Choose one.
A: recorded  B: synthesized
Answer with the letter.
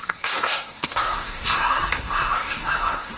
B